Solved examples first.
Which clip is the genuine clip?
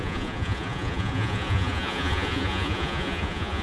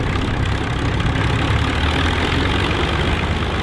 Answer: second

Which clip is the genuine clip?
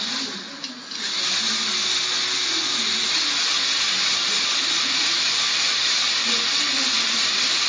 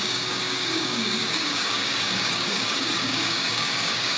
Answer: first